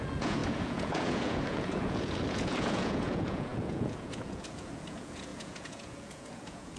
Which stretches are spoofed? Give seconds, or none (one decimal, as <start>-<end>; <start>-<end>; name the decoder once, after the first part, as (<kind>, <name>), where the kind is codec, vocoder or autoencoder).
0.0-6.8 (vocoder, Vocos)